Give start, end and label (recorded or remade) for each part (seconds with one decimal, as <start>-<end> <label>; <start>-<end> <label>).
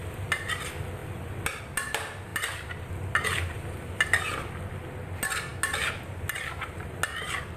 0.0-7.6 recorded